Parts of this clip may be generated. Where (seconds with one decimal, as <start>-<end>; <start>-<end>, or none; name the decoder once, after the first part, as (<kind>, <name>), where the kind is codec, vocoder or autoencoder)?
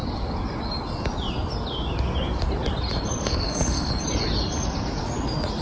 3.2-3.9 (autoencoder, DAC-VAE)